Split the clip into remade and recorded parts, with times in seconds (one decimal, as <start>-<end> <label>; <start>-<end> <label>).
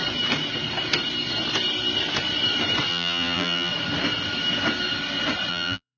0.0-2.9 recorded; 2.9-3.7 remade; 3.7-5.5 recorded; 5.5-6.0 remade